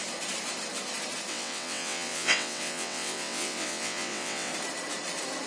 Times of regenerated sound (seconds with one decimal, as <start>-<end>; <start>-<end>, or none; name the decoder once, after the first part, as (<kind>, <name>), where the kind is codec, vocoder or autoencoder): 1.3-4.5 (vocoder, WaveNeXt)